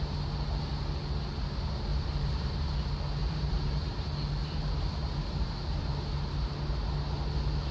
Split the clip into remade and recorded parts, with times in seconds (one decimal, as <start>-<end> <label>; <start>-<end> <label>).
0.0-1.9 recorded; 1.9-2.6 remade; 2.6-3.2 recorded; 3.2-3.7 remade; 3.7-4.4 recorded; 4.4-5.7 remade; 5.7-7.7 recorded